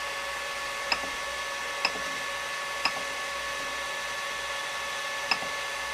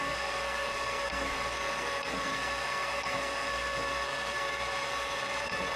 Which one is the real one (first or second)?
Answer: first